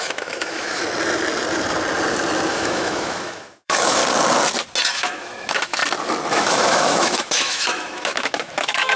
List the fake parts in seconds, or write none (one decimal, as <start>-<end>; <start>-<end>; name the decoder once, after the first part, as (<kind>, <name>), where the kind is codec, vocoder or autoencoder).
0.0-0.8 (autoencoder, DAC-VAE); 2.5-4.0; 4.9-5.8; 6.3-9.0

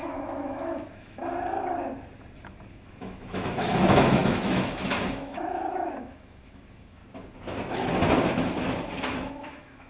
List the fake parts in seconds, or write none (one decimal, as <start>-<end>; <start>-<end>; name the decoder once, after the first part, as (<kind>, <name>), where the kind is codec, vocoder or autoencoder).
0.0-1.2 (autoencoder, DAC-VAE); 2.7-7.0; 9.3-9.9

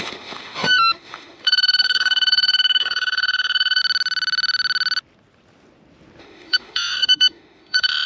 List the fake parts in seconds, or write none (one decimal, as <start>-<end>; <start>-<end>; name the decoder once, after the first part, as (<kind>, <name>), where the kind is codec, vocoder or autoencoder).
0.0-3.8 (autoencoder, DAC-VAE); 6.2-8.1

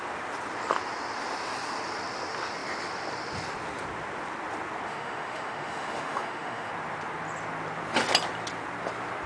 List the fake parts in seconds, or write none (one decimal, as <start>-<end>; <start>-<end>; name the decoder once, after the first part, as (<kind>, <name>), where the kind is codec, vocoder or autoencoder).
4.9-6.7 (autoencoder, DAC-VAE)